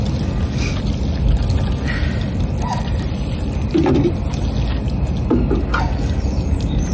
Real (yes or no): yes